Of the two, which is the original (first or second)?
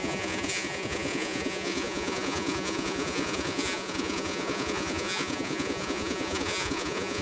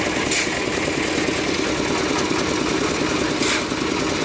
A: second